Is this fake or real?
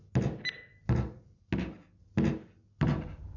real